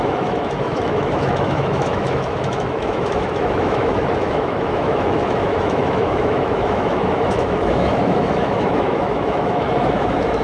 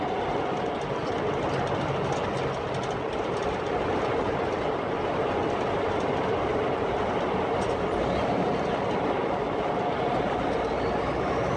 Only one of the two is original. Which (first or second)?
second